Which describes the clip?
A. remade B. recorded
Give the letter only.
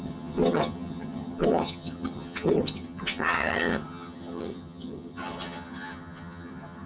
A